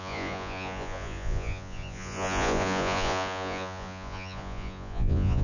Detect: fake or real fake